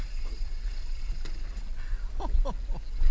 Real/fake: real